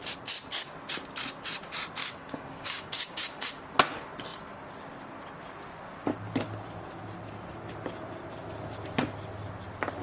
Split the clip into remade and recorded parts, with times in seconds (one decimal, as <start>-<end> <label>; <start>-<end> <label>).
0.0-2.0 recorded; 2.0-3.6 remade; 3.6-10.0 recorded